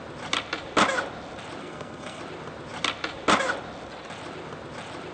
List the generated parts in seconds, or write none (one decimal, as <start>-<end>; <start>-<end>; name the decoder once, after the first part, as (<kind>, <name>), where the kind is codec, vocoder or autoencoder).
1.6-2.2 (codec, SNAC)